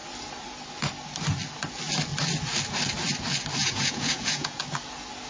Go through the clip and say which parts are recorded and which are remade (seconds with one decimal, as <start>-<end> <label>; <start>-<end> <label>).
0.0-3.6 recorded; 3.6-4.6 remade; 4.6-5.3 recorded